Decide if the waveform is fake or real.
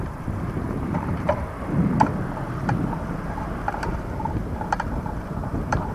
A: fake